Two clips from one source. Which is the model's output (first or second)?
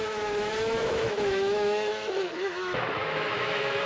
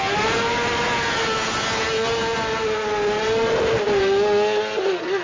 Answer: first